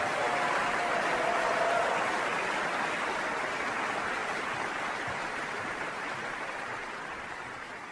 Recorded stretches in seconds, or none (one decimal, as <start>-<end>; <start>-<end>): 0.0-0.6; 3.4-4.2; 6.6-7.9